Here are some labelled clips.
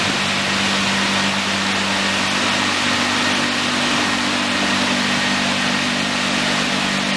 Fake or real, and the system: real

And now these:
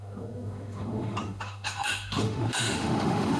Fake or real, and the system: fake, autoencoder, DAC-VAE